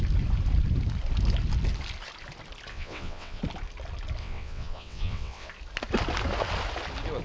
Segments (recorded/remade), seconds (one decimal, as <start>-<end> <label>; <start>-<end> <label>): 0.0-2.7 recorded; 2.7-3.4 remade; 3.4-4.2 recorded; 4.2-5.5 remade; 5.5-7.2 recorded